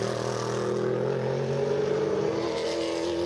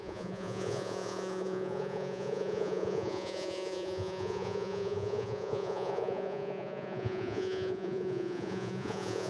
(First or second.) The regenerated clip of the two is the second